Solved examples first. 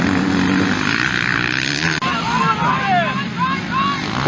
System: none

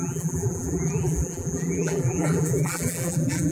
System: vocoder, BigVGAN v2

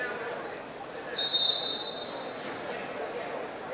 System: none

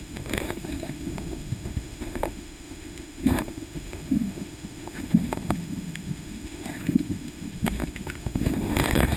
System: autoencoder, DAC-VAE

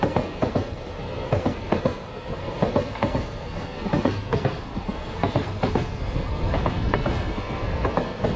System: codec, SNAC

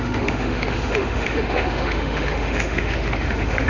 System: autoencoder, DAC-VAE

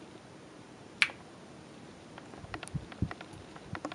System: none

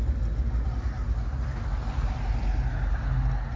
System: none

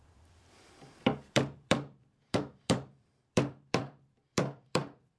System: vocoder, BigVGAN v2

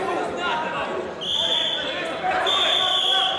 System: none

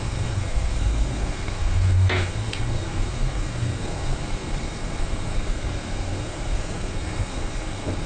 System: codec, SNAC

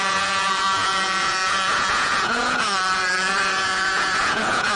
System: vocoder, Vocos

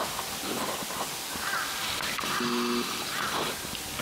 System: none